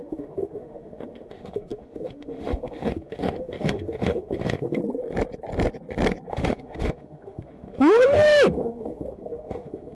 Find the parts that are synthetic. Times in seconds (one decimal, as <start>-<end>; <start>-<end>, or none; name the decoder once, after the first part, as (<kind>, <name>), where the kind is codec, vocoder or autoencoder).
0.0-4.8 (autoencoder, DAC-VAE); 6.3-9.9